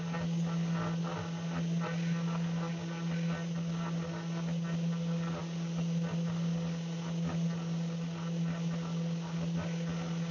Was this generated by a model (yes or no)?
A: no